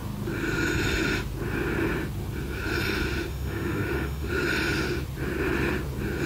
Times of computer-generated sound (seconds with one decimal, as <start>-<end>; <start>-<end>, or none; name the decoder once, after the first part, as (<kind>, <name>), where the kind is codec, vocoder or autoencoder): 3.3-4.3 (autoencoder, DAC-VAE)

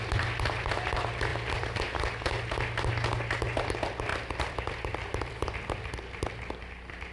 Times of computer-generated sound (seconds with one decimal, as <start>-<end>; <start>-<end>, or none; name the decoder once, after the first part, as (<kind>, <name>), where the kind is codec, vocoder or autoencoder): 1.3-2.0 (vocoder, BigVGAN v2); 4.1-5.5

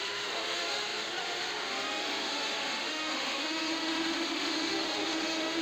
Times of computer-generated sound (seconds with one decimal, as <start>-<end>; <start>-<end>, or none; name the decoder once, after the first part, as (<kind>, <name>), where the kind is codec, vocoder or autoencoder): 0.0-5.6 (autoencoder, DAC-VAE)